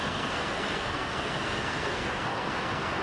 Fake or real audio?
fake